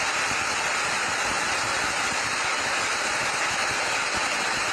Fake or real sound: real